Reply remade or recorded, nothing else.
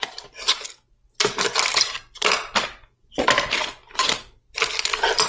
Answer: recorded